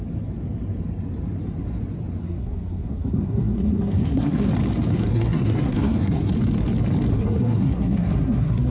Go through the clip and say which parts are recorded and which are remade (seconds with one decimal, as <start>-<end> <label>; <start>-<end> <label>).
0.0-2.2 recorded; 2.2-4.5 remade; 4.5-4.9 recorded; 4.9-6.3 remade; 6.3-7.1 recorded; 7.1-8.7 remade